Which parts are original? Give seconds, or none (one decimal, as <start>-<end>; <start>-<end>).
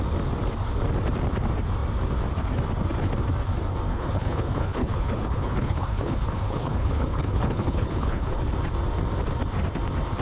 0.0-3.9; 8.4-10.2